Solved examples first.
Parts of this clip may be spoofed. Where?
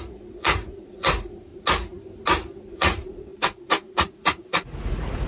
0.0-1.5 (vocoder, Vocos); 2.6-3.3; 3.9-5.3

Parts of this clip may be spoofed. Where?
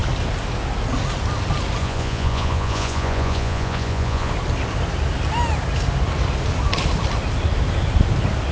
1.8-4.3 (vocoder, Vocos)